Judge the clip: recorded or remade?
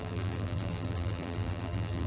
remade